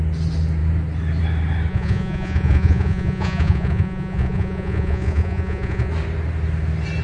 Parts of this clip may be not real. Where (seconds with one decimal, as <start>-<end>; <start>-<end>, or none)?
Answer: 1.7-5.9